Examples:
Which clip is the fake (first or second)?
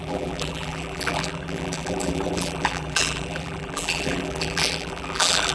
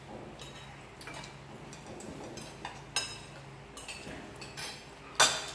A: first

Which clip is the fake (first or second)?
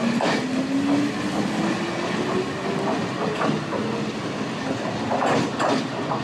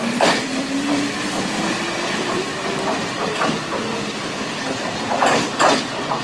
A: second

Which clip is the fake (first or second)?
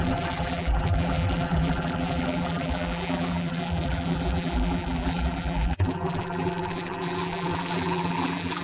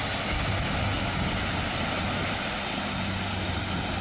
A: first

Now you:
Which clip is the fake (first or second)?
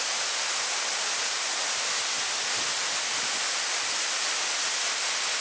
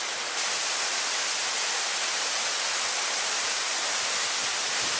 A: second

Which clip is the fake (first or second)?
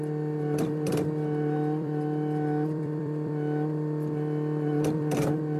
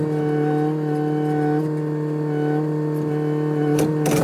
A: first